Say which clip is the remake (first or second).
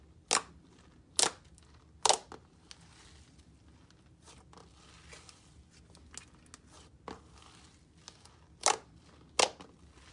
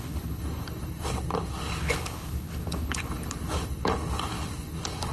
second